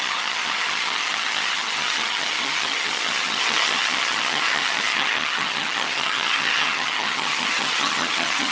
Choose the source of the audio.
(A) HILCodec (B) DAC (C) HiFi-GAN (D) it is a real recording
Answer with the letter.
C